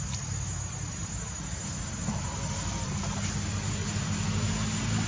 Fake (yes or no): no